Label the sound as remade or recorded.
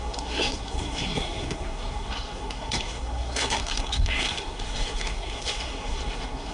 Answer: remade